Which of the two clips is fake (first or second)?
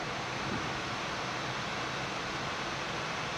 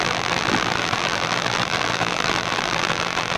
second